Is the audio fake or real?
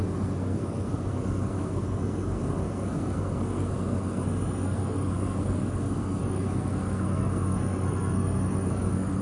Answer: fake